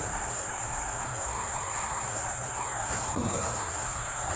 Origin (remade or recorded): remade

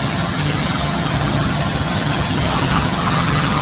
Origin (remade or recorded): remade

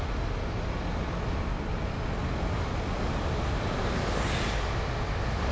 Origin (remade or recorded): recorded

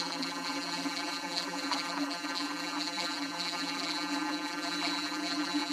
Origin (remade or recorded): remade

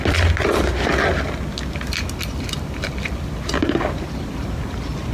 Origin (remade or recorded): recorded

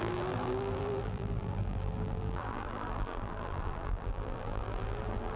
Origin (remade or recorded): remade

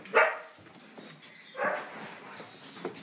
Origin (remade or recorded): recorded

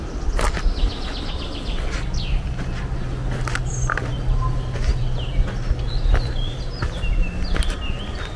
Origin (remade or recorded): recorded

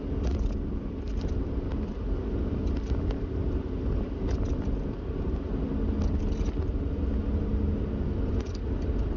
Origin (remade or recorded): recorded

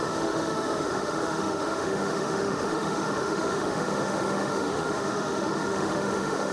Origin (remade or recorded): remade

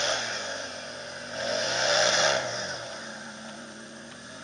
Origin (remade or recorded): remade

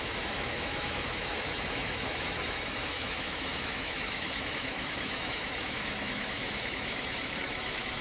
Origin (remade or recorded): remade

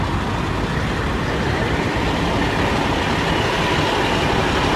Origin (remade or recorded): recorded